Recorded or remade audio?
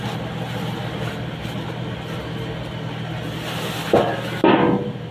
recorded